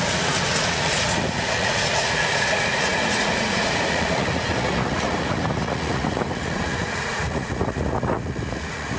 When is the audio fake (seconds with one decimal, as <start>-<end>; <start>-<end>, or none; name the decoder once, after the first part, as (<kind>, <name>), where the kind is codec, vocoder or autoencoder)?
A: 0.0-9.0 (vocoder, Vocos)